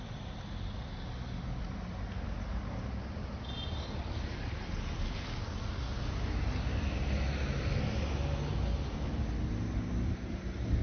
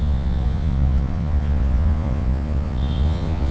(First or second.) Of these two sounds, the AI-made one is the second